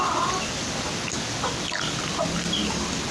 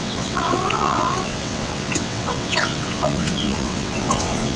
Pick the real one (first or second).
first